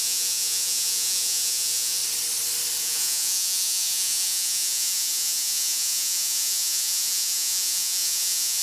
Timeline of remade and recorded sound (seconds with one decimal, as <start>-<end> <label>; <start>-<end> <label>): 0.0-2.0 remade; 2.0-2.8 recorded; 2.8-8.6 remade